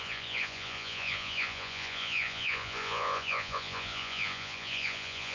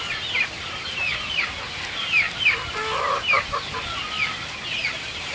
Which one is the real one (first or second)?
second